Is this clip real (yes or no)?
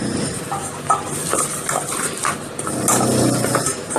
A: yes